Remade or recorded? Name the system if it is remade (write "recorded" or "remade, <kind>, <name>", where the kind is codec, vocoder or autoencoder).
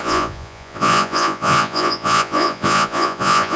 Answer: remade, vocoder, Vocos